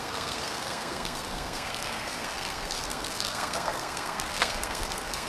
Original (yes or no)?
no